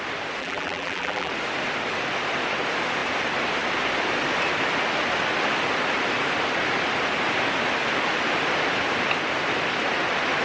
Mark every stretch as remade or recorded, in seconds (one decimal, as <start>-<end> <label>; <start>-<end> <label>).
0.0-0.4 recorded; 0.4-1.3 remade; 1.3-10.4 recorded